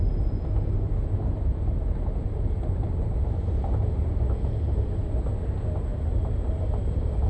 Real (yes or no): yes